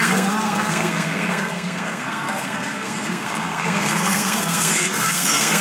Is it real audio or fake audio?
fake